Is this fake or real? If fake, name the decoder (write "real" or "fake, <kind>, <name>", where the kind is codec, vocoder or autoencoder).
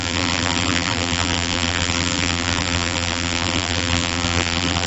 fake, vocoder, BigVGAN v2